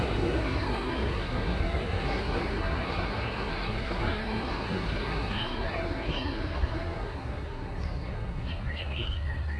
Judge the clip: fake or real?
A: fake